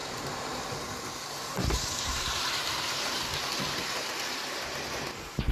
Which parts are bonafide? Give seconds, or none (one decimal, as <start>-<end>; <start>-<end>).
0.0-1.5; 4.8-5.5